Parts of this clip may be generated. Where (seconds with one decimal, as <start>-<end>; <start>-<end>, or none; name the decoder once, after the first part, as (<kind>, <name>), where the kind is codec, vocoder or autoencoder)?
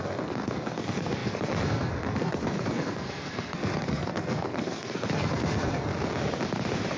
0.0-5.9 (codec, SNAC)